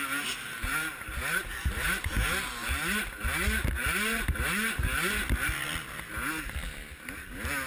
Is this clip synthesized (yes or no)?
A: no